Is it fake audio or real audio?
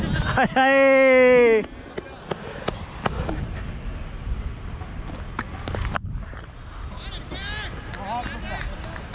real